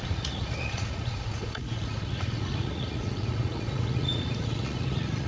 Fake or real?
fake